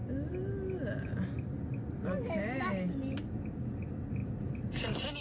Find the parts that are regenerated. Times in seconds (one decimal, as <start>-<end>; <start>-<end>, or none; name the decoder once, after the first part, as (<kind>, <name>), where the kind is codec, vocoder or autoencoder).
4.2-5.2 (vocoder, BigVGAN v2)

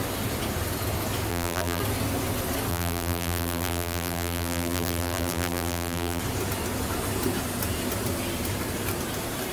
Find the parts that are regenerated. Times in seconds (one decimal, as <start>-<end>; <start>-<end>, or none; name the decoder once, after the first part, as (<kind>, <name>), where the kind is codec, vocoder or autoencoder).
1.3-1.8 (vocoder, BigVGAN v2); 2.7-6.2

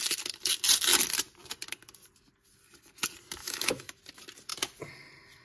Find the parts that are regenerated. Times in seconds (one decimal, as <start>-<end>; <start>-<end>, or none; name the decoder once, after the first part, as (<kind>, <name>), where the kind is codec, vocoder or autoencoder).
3.4-4.0 (autoencoder, DAC-VAE)

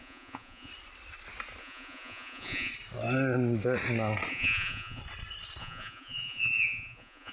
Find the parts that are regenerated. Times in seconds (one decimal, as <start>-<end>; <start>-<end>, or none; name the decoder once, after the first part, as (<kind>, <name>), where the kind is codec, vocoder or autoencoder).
0.0-0.7 (vocoder, Vocos); 1.6-2.7; 4.3-5.0; 5.6-7.3